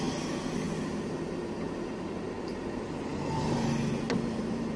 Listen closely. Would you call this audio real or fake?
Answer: real